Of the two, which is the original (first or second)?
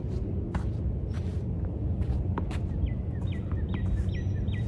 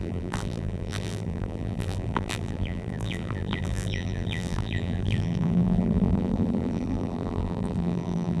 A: first